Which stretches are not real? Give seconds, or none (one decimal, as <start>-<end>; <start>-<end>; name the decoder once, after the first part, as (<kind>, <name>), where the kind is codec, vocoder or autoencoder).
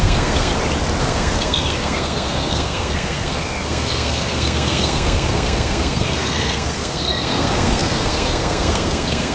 0.0-0.5 (codec, SNAC); 1.0-9.3